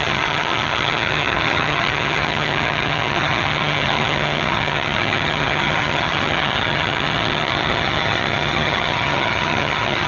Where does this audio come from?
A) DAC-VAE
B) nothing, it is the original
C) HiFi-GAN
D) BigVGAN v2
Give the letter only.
C